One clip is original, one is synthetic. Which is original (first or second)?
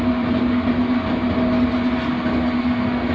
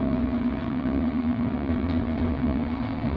first